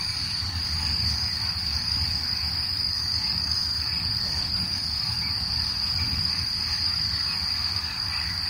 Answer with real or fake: fake